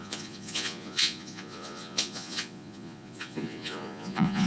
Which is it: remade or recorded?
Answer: remade